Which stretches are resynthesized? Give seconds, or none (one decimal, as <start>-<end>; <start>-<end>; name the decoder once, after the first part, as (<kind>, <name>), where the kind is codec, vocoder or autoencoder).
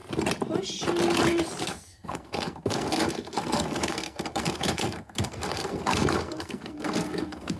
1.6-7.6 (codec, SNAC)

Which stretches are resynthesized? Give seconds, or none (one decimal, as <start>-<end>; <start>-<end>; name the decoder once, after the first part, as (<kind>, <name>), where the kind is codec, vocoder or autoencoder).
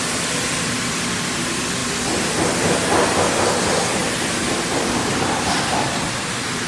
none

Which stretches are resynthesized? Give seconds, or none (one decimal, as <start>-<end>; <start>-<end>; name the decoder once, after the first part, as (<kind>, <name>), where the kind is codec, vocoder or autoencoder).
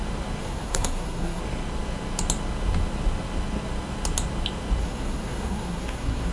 0.4-1.4 (codec, SNAC); 4.8-6.3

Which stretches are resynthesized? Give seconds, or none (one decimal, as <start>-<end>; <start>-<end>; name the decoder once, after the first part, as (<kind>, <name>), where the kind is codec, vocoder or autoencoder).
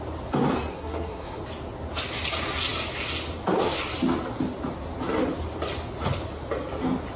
0.7-1.4 (codec, SNAC)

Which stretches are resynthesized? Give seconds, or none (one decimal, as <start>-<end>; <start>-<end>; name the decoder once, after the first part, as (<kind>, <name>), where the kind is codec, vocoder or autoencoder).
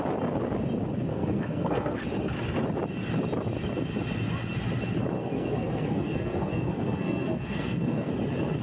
1.1-2.0 (codec, SNAC); 5.2-8.1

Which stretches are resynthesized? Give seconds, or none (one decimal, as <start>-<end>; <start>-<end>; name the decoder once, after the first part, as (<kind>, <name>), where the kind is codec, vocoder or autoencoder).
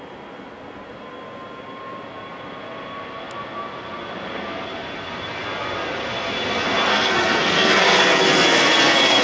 6.9-8.0 (codec, SNAC)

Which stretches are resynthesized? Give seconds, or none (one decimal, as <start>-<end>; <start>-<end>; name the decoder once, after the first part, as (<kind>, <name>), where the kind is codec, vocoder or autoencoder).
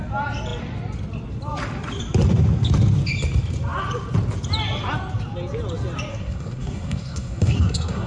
6.1-8.1 (codec, SNAC)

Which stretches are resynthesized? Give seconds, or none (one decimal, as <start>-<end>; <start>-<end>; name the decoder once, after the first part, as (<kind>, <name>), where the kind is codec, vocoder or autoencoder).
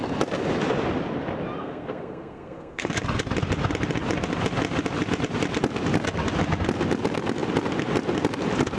1.6-2.9 (codec, SNAC)